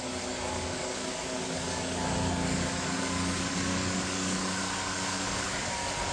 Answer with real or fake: fake